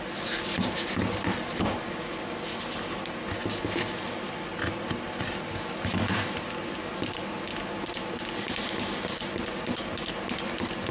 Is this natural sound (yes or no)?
yes